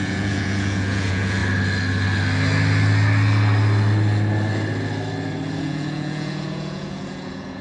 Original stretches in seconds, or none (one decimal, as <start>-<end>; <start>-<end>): 1.4-5.6